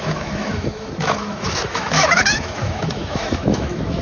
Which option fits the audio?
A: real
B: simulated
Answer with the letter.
B